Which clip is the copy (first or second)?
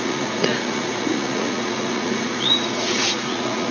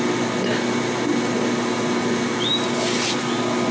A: first